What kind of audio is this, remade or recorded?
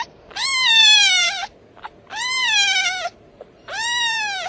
remade